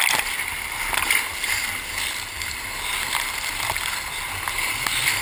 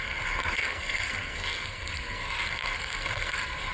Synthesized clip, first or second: second